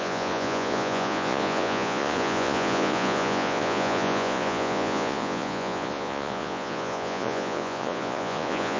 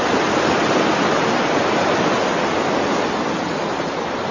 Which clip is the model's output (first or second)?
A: first